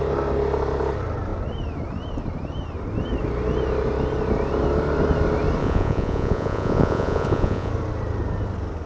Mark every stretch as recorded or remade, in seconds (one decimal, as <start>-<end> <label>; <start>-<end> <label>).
0.0-5.6 recorded; 5.6-7.7 remade; 7.7-8.9 recorded

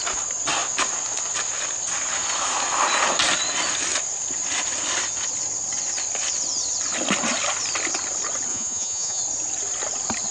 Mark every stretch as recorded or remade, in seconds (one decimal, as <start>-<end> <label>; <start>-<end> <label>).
0.0-8.5 recorded; 8.5-9.2 remade; 9.2-10.3 recorded

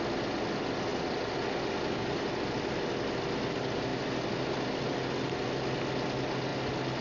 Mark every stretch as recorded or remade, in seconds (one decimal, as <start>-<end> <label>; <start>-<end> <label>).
0.0-7.0 recorded